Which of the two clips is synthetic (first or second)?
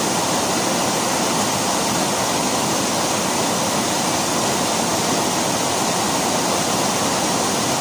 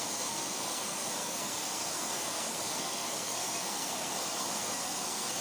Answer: second